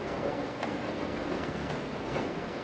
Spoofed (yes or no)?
yes